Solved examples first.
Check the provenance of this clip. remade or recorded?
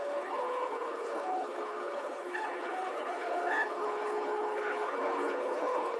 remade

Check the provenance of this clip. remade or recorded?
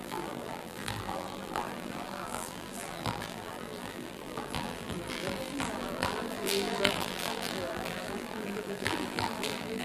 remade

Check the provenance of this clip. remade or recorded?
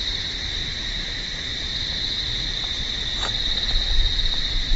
recorded